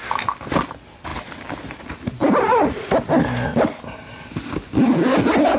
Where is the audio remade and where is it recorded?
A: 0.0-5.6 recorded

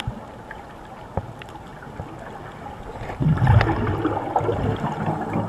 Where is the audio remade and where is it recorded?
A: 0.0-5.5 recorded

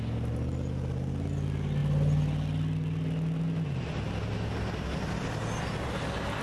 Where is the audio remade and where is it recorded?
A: 0.0-6.4 recorded

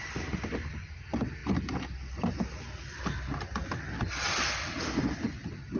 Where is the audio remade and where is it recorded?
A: 0.0-5.8 recorded

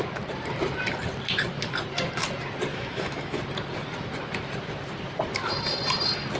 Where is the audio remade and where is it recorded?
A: 0.0-2.7 recorded; 2.7-3.4 remade; 3.4-6.4 recorded

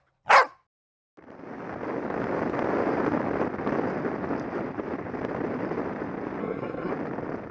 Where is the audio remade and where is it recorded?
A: 0.0-6.4 recorded; 6.4-6.9 remade; 6.9-7.5 recorded

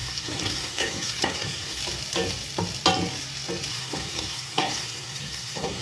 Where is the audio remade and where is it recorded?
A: 0.0-1.8 remade; 1.8-3.7 recorded; 3.7-5.8 remade

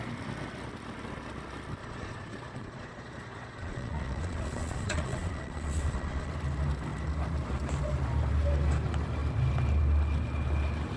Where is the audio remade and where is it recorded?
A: 0.0-1.8 recorded; 1.8-6.3 remade; 6.3-11.0 recorded